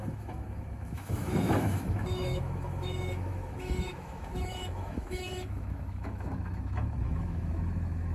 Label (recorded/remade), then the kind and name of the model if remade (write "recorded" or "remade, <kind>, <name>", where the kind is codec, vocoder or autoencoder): remade, autoencoder, DAC-VAE